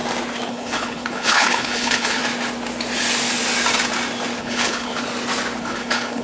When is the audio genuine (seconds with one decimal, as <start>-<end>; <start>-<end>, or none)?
0.0-0.5; 2.2-4.4; 4.9-5.6